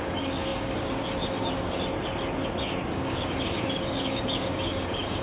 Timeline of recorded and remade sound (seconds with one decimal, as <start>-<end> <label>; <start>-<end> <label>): 0.0-1.9 remade; 1.9-2.9 recorded; 2.9-5.2 remade